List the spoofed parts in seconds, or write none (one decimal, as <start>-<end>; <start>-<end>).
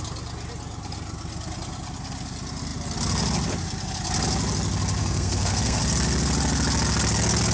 5.0-5.8